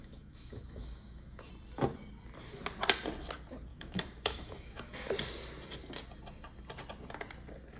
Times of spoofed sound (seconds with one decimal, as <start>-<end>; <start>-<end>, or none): 0.0-1.5; 3.7-5.1